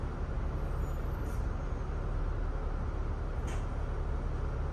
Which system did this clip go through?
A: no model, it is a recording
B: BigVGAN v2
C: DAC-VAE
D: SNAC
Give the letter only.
A